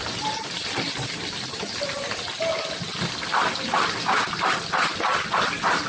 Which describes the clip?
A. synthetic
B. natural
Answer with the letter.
B